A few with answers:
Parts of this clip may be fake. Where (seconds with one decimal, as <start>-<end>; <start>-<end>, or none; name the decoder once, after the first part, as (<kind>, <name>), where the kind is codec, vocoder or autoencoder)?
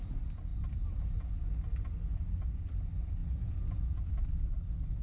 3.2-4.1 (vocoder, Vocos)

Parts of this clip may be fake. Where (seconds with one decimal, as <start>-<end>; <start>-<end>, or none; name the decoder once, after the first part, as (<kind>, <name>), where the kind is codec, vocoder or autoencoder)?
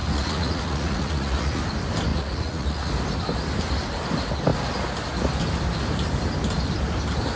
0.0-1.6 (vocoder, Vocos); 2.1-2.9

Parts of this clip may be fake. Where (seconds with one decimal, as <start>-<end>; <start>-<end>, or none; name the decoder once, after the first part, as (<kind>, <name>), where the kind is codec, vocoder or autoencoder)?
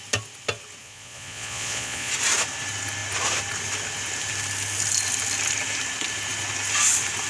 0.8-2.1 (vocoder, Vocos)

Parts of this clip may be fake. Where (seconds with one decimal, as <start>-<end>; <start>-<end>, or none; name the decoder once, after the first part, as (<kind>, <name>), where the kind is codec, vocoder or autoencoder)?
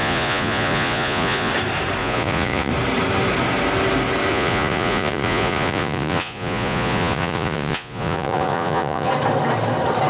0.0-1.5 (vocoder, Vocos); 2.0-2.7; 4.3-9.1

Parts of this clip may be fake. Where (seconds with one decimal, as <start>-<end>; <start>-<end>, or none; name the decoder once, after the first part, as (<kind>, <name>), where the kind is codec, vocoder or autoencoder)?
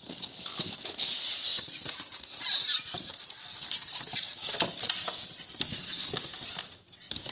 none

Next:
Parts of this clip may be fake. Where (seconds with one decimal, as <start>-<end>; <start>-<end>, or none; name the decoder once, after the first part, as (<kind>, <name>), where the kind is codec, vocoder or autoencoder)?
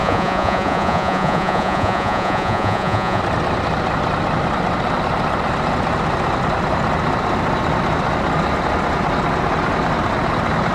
0.0-3.2 (vocoder, Vocos)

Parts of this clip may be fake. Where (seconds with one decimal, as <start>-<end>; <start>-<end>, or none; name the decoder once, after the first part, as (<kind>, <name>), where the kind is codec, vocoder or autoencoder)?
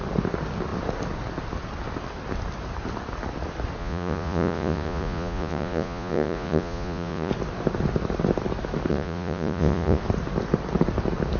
3.8-7.3 (vocoder, Vocos); 8.9-10.0